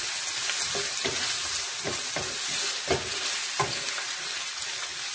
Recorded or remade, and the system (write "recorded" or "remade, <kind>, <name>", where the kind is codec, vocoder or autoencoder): recorded